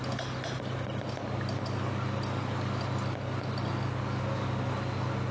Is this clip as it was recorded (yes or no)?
yes